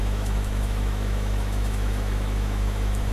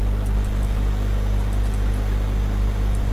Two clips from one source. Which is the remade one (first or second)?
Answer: first